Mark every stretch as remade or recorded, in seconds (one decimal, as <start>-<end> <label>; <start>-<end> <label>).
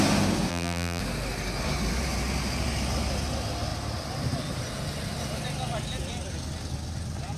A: 0.0-0.5 recorded; 0.5-1.0 remade; 1.0-7.4 recorded